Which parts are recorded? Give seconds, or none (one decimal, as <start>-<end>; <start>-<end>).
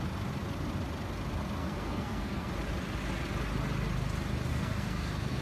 0.0-1.6; 2.5-4.5